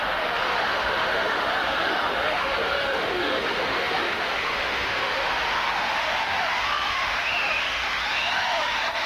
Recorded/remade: remade